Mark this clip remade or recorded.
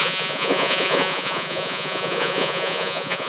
remade